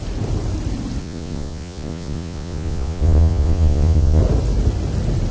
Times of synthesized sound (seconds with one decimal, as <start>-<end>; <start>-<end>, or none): 1.0-4.2